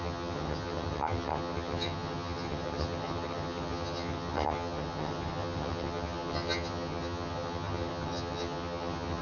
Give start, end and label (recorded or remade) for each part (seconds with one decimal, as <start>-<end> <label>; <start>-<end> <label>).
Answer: 0.0-9.2 remade